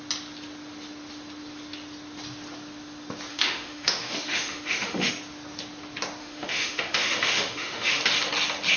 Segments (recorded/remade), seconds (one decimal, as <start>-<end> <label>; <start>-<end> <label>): 0.0-3.3 recorded; 3.3-5.1 remade; 5.1-6.2 recorded; 6.2-8.0 remade; 8.0-8.8 recorded